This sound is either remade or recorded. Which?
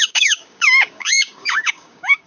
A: remade